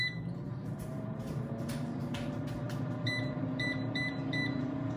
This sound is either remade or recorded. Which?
remade